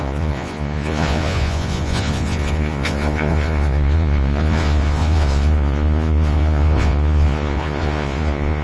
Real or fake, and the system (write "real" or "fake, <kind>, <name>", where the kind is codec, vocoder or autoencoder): fake, vocoder, Vocos